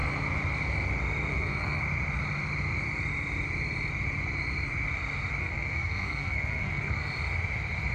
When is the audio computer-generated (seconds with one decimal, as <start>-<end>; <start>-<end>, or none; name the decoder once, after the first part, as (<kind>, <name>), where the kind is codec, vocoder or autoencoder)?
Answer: 1.3-1.8 (codec, SNAC); 5.4-7.1